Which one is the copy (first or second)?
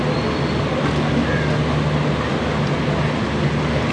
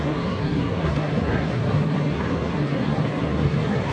second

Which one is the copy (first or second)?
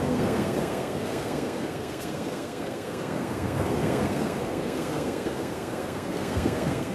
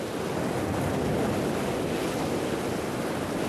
first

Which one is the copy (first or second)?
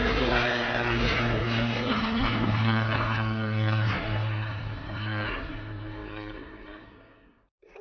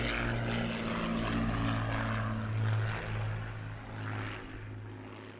first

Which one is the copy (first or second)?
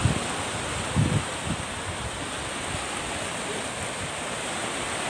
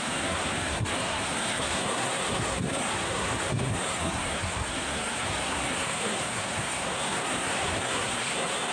second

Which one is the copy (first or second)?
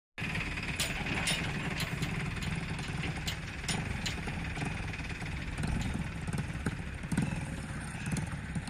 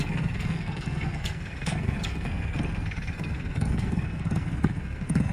second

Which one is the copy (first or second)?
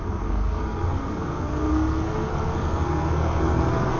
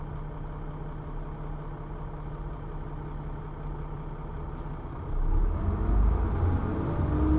first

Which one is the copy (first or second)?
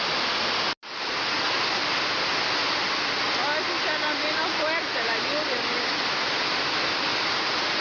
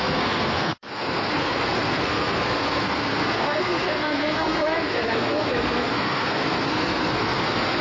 second